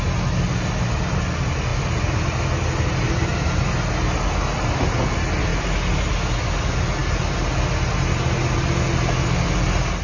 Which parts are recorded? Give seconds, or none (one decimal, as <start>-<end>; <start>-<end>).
0.0-10.0